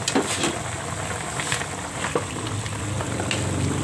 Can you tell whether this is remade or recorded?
recorded